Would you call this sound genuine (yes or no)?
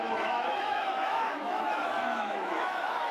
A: no